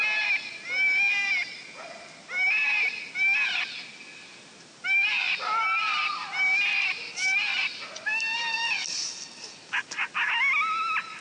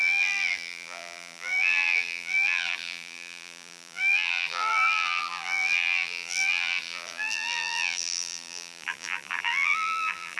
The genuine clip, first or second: first